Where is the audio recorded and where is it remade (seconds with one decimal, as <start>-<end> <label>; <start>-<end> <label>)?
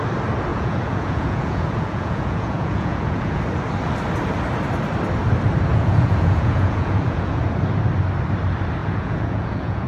0.0-0.5 recorded; 0.5-3.4 remade; 3.4-5.7 recorded; 5.7-7.4 remade; 7.4-8.8 recorded; 8.8-9.9 remade